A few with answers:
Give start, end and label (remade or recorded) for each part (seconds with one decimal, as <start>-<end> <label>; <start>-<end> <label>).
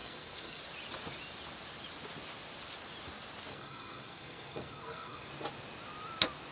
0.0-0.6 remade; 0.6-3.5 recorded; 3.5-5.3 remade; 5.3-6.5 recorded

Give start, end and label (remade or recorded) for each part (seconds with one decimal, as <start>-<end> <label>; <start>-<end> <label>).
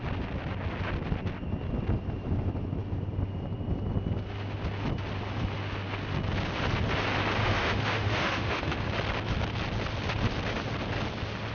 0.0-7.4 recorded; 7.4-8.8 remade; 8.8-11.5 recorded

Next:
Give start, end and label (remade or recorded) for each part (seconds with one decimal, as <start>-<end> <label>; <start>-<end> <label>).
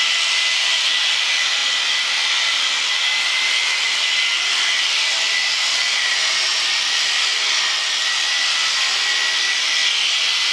0.0-10.5 recorded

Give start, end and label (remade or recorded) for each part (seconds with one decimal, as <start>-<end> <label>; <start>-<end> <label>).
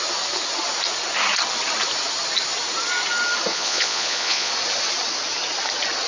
0.0-3.5 recorded; 3.5-4.5 remade; 4.5-6.1 recorded